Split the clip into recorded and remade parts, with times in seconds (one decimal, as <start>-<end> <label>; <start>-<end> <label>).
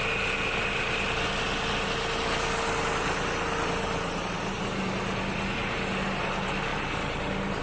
0.0-7.6 recorded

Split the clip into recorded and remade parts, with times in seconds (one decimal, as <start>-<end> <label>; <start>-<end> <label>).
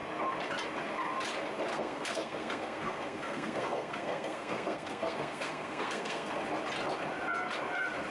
0.0-1.7 recorded; 1.7-6.3 remade; 6.3-8.1 recorded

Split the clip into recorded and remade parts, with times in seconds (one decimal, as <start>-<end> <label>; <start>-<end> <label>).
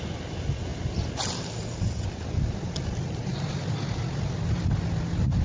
0.0-5.4 recorded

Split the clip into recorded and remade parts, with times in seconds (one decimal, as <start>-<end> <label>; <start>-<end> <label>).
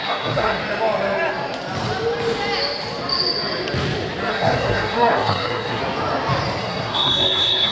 0.0-0.6 remade; 0.6-4.3 recorded; 4.3-5.8 remade; 5.8-6.6 recorded; 6.6-7.7 remade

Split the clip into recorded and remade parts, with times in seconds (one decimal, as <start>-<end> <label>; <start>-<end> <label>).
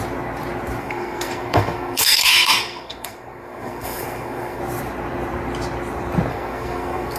0.0-0.8 recorded; 0.8-4.6 remade; 4.6-6.3 recorded; 6.3-7.2 remade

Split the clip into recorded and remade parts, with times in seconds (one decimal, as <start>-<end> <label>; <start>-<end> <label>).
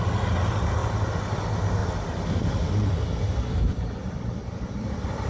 0.0-0.8 recorded; 0.8-1.4 remade; 1.4-1.8 recorded; 1.8-5.3 remade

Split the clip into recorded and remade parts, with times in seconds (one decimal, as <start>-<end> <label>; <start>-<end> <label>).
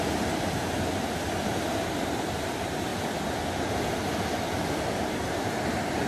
0.0-0.6 remade; 0.6-2.0 recorded; 2.0-2.9 remade; 2.9-4.8 recorded; 4.8-6.1 remade